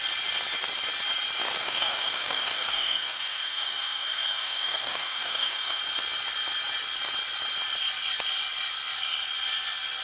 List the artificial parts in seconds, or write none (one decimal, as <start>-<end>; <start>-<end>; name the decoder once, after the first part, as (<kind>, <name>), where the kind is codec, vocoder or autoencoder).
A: 1.6-5.8 (codec, DAC)